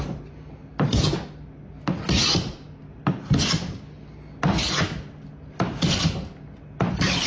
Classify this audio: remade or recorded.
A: recorded